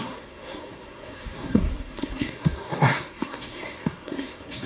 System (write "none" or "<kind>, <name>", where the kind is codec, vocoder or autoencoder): codec, SNAC